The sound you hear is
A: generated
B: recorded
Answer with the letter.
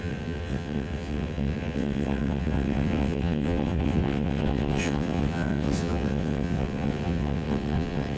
A